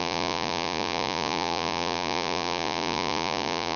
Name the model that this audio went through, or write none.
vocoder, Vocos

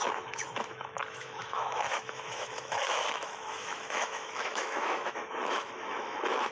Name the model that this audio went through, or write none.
autoencoder, DAC-VAE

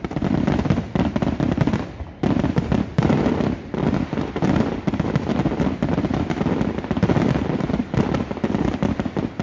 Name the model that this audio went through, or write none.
none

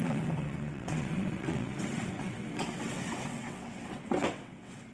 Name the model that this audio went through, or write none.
vocoder, WaveNeXt